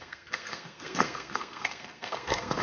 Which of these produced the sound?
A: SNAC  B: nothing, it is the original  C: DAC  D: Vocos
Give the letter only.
A